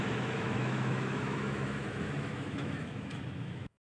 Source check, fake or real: fake